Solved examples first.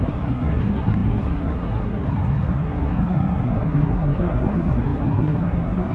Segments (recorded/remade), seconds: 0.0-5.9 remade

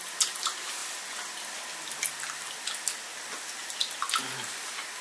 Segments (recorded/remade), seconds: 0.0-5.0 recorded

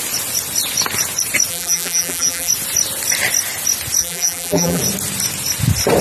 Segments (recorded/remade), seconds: 0.0-1.5 recorded; 1.5-2.5 remade; 2.5-4.0 recorded; 4.0-4.8 remade; 4.8-6.0 recorded

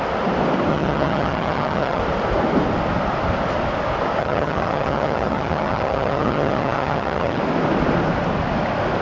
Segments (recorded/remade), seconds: 0.0-0.7 recorded; 0.7-2.0 remade; 2.0-4.2 recorded; 4.2-7.4 remade; 7.4-9.0 recorded

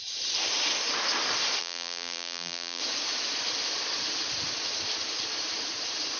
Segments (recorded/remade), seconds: 0.0-1.6 recorded; 1.6-2.8 remade; 2.8-6.2 recorded

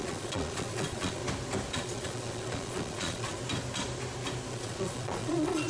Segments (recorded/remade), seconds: 0.0-1.2 remade; 1.2-1.7 recorded; 1.7-3.4 remade; 3.4-4.5 recorded; 4.5-5.7 remade

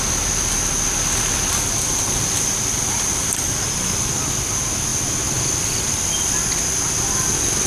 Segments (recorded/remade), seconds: 0.0-7.7 recorded

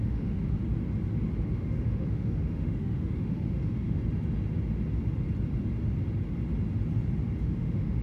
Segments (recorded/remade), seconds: 0.0-0.6 remade; 0.6-1.5 recorded; 1.5-4.0 remade; 4.0-7.4 recorded; 7.4-8.0 remade